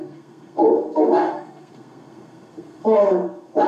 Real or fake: fake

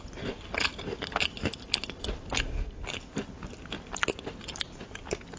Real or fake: real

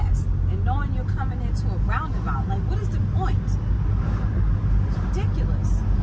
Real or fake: real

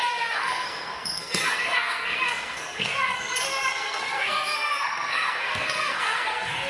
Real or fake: fake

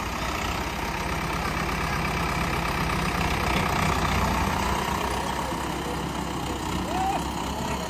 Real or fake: real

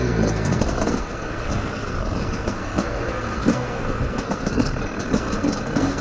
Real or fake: fake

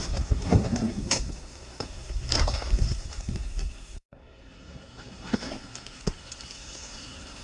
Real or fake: fake